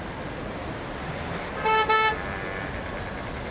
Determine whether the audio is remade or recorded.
recorded